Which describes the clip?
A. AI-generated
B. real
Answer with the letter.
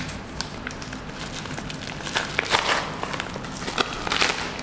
B